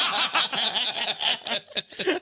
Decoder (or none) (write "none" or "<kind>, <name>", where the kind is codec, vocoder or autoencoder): none